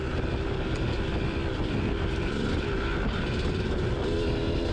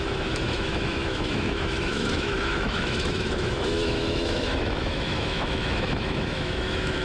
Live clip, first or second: first